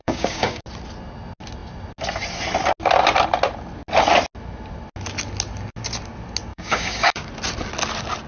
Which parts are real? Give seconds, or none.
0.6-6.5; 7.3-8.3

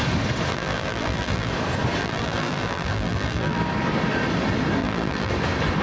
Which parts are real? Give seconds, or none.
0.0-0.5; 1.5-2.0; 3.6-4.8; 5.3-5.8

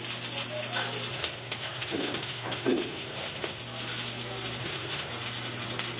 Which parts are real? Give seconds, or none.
0.0-1.1; 3.6-4.6; 5.1-6.0